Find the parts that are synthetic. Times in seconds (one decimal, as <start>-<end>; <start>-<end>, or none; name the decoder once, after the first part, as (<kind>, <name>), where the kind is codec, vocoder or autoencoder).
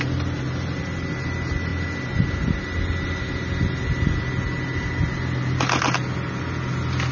none